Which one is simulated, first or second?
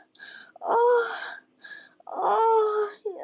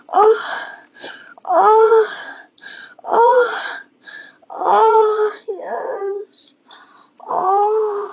second